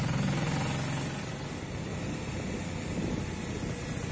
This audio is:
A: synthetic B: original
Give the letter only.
B